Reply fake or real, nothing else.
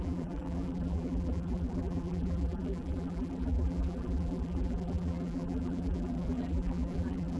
fake